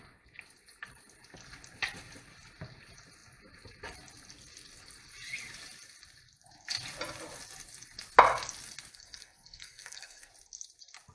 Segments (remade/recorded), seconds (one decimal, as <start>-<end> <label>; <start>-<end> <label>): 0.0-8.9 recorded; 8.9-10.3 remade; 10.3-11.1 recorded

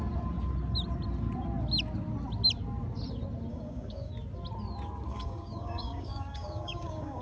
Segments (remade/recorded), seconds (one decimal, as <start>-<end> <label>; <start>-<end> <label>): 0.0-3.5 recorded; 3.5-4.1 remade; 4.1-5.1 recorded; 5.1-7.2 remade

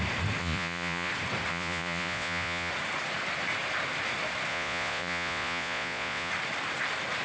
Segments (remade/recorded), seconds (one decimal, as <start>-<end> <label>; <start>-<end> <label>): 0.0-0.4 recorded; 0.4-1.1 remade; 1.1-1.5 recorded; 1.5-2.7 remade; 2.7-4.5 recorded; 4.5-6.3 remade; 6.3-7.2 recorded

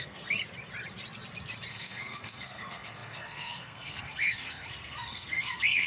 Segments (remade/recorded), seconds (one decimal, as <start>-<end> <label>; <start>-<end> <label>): 0.0-0.4 remade; 0.4-1.7 recorded; 1.7-5.9 remade

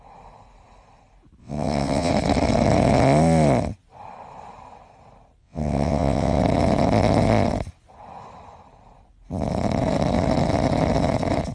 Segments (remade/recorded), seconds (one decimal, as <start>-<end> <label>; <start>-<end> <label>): 0.0-1.4 recorded; 1.4-2.1 remade; 2.1-5.4 recorded; 5.4-6.4 remade; 6.4-11.5 recorded